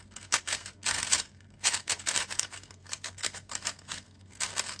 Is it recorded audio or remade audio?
remade